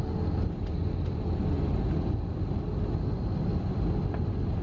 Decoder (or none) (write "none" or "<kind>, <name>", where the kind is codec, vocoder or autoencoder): none